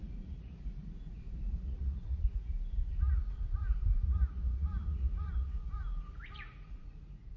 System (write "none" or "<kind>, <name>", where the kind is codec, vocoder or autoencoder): vocoder, Vocos